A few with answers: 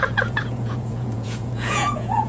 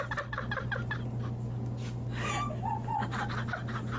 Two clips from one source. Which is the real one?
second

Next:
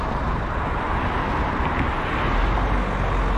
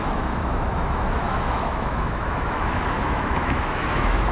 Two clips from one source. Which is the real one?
first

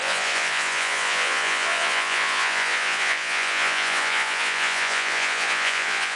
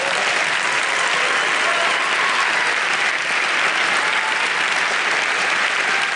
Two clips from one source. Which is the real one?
second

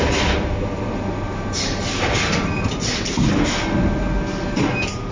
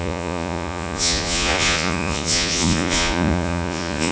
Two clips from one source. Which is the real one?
first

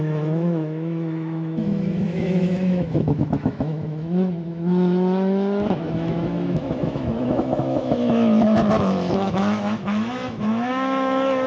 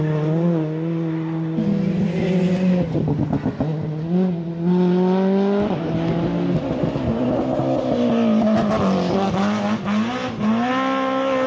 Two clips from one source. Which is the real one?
second